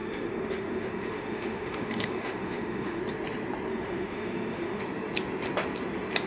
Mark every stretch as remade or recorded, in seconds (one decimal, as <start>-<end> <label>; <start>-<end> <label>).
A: 0.0-3.0 remade; 3.0-3.7 recorded; 3.7-4.8 remade; 4.8-6.3 recorded